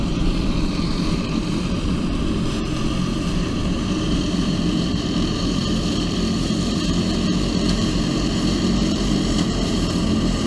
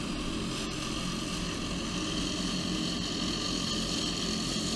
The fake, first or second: first